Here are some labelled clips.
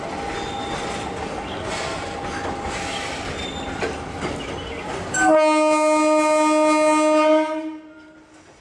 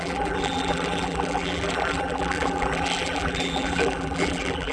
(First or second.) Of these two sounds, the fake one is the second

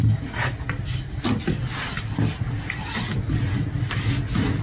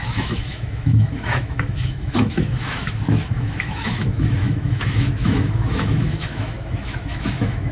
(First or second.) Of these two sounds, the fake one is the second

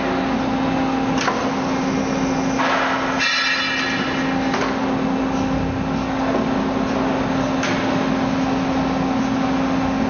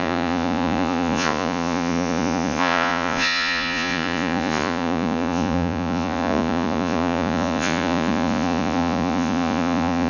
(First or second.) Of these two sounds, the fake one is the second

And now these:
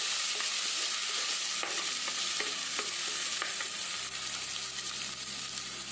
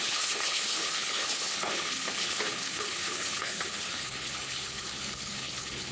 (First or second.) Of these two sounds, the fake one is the second